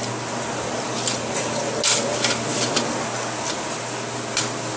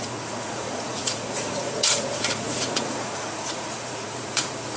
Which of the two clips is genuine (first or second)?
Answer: first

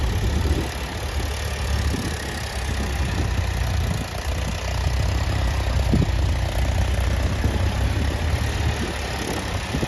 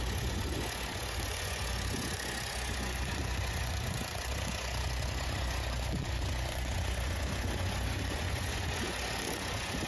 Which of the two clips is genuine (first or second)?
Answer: first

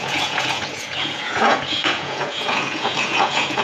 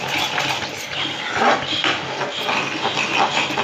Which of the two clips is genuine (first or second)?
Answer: second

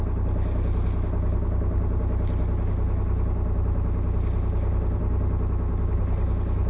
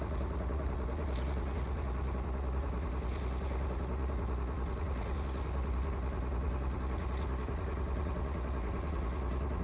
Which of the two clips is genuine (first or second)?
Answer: first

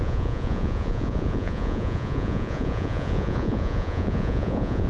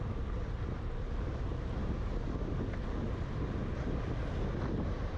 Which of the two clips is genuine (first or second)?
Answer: second